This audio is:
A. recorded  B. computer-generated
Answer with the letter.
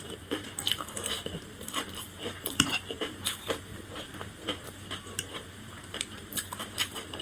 B